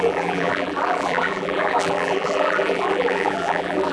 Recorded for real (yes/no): no